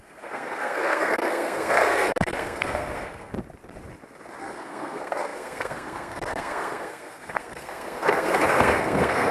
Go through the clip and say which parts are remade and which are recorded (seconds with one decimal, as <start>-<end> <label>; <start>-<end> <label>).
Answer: 0.0-3.3 remade; 3.3-4.4 recorded; 4.4-9.3 remade